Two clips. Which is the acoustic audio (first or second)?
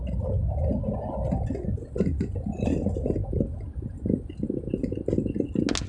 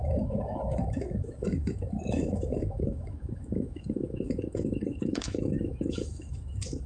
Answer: first